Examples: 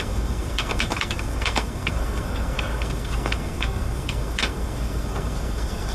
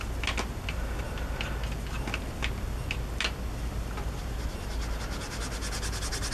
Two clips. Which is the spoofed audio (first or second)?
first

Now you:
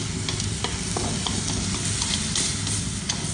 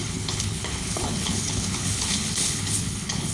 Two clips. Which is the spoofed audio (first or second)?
second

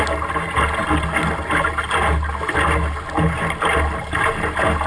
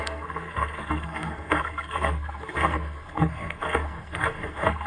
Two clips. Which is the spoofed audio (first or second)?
second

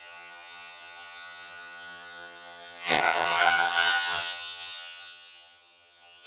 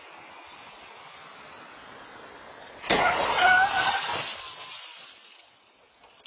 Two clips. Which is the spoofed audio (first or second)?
first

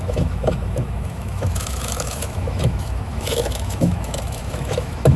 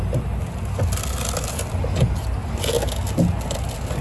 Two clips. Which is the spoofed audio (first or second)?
first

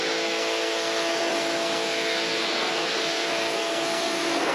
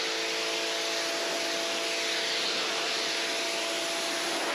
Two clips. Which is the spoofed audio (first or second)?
first